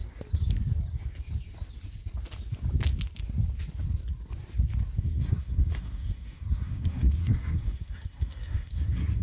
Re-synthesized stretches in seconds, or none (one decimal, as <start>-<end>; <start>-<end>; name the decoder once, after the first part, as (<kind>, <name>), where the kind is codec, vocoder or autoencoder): 5.0-9.2 (codec, SNAC)